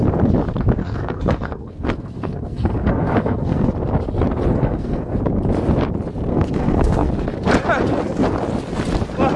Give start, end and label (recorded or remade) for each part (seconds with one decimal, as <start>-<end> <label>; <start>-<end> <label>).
0.0-0.8 recorded; 0.8-3.7 remade; 3.7-4.5 recorded; 4.5-5.2 remade; 5.2-6.3 recorded; 6.3-7.1 remade; 7.1-9.4 recorded